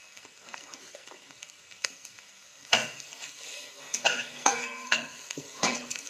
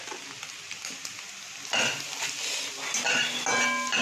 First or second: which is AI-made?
first